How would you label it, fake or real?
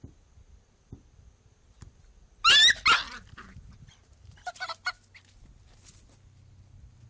real